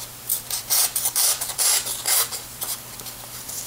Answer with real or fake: fake